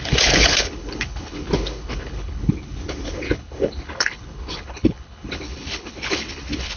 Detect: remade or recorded remade